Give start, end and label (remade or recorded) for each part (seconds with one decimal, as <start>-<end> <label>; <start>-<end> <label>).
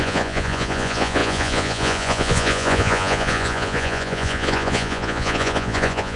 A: 0.0-6.2 remade